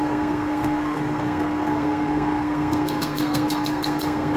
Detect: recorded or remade remade